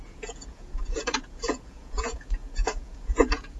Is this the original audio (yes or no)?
no